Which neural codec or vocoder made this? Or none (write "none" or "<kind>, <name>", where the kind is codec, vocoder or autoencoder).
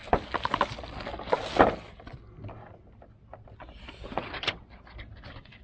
none